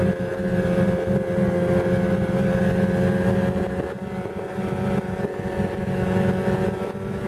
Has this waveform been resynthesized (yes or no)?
no